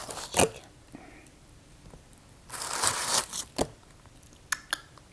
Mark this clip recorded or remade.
recorded